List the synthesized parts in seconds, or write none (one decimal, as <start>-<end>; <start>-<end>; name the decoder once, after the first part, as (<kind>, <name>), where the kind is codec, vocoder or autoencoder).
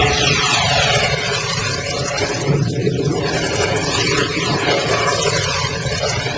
2.8-3.9 (vocoder, BigVGAN v2)